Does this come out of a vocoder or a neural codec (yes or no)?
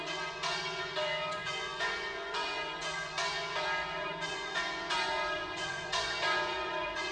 yes